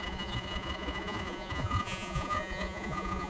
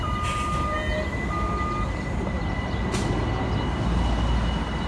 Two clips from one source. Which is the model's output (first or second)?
first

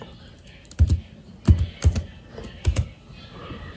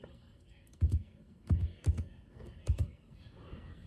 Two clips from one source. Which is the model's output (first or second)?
second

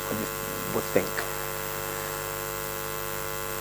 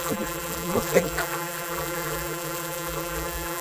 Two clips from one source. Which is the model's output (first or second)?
second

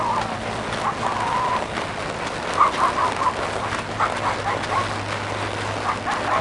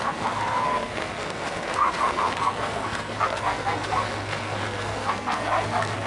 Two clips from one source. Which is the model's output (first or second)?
second